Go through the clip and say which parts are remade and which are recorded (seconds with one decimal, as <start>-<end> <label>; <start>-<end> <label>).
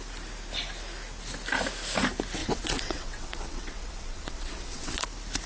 0.0-2.4 recorded; 2.4-5.0 remade; 5.0-5.5 recorded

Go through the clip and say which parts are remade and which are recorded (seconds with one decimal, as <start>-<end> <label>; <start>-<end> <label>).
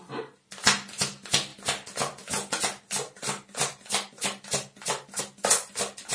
0.0-6.1 recorded